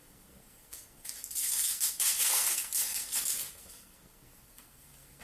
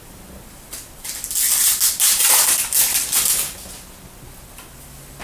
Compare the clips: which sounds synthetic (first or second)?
first